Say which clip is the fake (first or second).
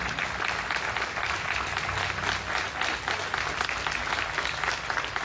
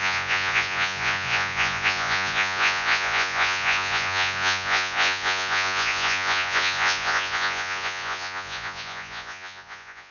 second